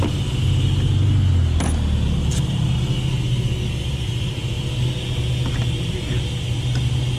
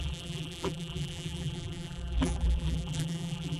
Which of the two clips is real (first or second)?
first